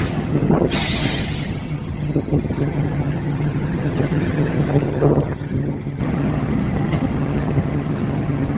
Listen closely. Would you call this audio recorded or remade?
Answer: remade